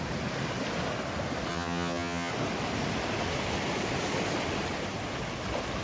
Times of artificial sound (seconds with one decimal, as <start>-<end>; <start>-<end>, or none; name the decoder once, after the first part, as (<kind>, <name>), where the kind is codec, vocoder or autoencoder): 1.5-2.3 (vocoder, HiFi-GAN)